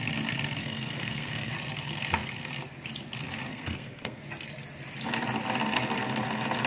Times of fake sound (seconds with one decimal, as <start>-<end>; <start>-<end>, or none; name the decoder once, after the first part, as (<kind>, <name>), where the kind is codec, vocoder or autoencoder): 0.6-1.5 (codec, SNAC); 3.5-4.2